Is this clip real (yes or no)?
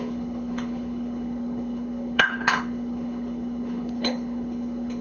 no